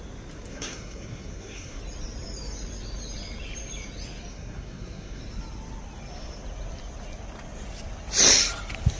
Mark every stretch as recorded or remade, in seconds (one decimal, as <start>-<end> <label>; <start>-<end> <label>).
0.0-0.5 recorded; 0.5-1.8 remade; 1.8-4.3 recorded; 4.3-5.2 remade; 5.2-9.0 recorded